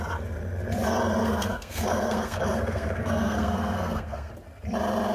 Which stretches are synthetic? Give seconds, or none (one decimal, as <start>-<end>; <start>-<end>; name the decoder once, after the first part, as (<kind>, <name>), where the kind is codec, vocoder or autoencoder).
1.2-4.3 (codec, SNAC)